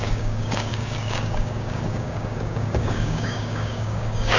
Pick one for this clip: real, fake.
fake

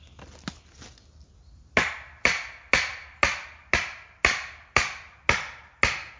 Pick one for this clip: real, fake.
real